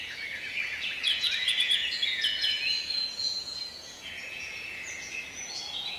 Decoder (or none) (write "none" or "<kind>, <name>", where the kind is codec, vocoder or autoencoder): vocoder, Vocos